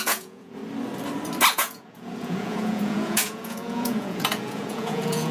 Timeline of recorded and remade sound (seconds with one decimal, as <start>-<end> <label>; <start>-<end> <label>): 0.0-0.6 remade; 0.6-1.5 recorded; 1.5-5.3 remade